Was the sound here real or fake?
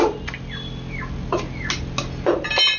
real